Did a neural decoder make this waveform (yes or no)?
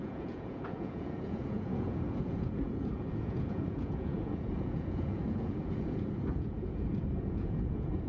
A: yes